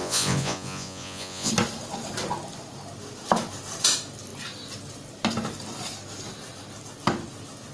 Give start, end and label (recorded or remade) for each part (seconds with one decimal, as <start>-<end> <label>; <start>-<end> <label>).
0.0-1.5 remade; 1.5-7.7 recorded

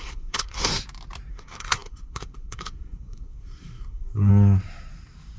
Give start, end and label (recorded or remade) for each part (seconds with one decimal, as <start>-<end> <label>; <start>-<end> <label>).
0.0-0.7 remade; 0.7-1.3 recorded; 1.3-4.3 remade; 4.3-5.4 recorded

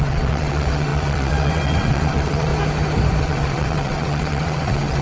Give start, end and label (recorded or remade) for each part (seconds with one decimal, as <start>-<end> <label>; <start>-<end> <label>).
0.0-2.5 remade; 2.5-3.2 recorded; 3.2-5.0 remade

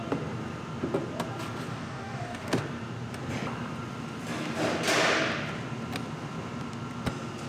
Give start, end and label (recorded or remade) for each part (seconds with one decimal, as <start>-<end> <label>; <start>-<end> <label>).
0.0-1.7 recorded; 1.7-2.6 remade; 2.6-7.5 recorded

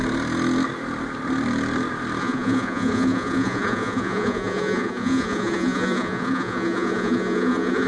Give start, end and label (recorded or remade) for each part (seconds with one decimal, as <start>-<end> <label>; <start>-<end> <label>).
0.0-2.2 recorded; 2.2-7.9 remade

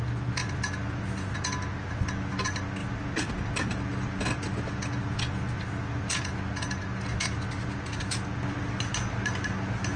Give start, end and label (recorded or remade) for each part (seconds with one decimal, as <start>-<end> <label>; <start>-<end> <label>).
0.0-10.0 recorded

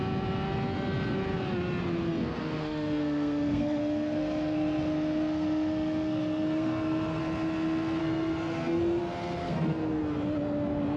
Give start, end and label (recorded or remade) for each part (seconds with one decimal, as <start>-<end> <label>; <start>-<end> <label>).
0.0-2.2 recorded; 2.2-7.2 remade; 7.2-8.0 recorded; 8.0-9.0 remade; 9.0-9.4 recorded; 9.4-10.0 remade; 10.0-11.0 recorded

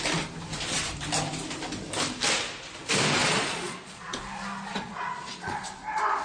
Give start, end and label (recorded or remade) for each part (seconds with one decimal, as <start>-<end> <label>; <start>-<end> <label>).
0.0-3.2 recorded; 3.2-4.2 remade; 4.2-4.7 recorded; 4.7-5.6 remade; 5.6-6.2 recorded